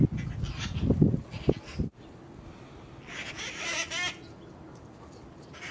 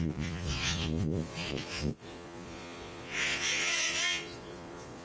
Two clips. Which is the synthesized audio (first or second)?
second